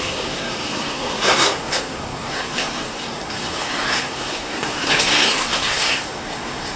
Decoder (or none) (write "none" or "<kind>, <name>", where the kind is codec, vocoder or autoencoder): codec, SNAC